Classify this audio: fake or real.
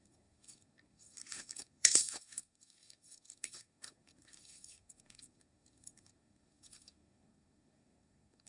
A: fake